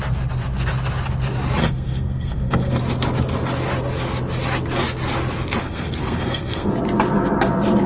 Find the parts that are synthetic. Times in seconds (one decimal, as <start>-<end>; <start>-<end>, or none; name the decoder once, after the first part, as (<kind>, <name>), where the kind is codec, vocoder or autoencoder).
1.6-2.8 (codec, SNAC); 5.6-6.7